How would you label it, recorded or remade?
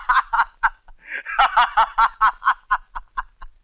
recorded